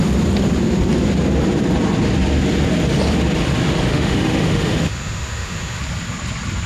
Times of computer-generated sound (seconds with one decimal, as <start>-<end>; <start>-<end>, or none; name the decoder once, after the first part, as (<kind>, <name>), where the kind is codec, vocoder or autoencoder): 3.9-5.8 (autoencoder, DAC-VAE)